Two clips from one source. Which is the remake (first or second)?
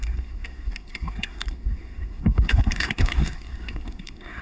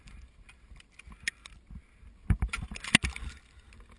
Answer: first